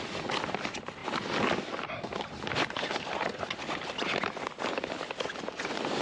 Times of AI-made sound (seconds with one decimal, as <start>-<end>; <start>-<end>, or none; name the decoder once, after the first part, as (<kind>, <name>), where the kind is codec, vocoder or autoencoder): none